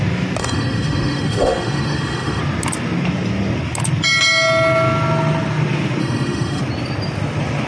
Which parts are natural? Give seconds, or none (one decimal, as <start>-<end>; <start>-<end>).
0.0-0.4; 2.4-6.0; 6.6-7.7